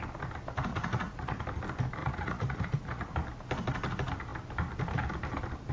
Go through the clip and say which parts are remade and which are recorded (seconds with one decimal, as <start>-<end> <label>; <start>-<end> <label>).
0.0-0.7 recorded; 0.7-1.4 remade; 1.4-2.0 recorded; 2.0-3.1 remade; 3.1-5.7 recorded